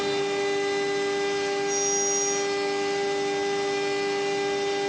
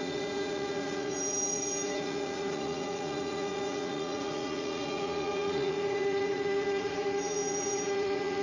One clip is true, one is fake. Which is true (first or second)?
first